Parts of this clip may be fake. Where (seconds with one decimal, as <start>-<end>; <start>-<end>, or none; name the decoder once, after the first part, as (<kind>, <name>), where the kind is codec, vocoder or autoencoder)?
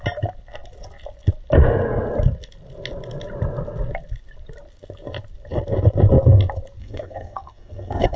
6.8-8.2 (codec, SNAC)